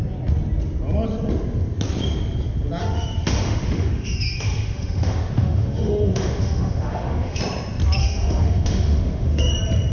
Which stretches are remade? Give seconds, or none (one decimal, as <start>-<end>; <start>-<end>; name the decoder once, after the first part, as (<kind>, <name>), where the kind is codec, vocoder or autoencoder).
2.8-7.4 (autoencoder, DAC-VAE); 8.0-9.5